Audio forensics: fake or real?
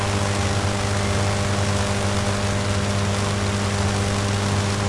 real